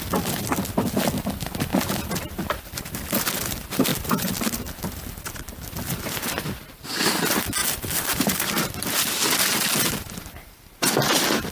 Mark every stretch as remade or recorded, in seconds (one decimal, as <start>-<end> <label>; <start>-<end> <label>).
0.0-3.9 recorded; 3.9-4.5 remade; 4.5-7.6 recorded; 7.6-8.5 remade; 8.5-9.2 recorded; 9.2-10.6 remade; 10.6-11.5 recorded